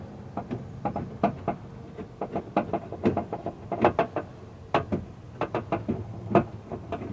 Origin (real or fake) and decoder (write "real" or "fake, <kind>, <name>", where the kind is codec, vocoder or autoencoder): real